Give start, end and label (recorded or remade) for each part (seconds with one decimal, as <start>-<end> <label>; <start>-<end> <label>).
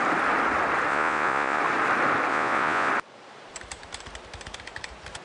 0.0-0.9 recorded; 0.9-1.6 remade; 1.6-2.3 recorded; 2.3-2.9 remade; 2.9-5.2 recorded